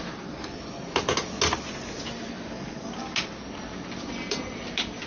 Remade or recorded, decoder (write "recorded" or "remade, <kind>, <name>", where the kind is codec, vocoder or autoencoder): recorded